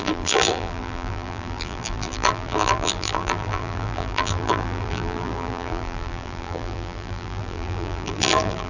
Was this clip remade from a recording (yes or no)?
yes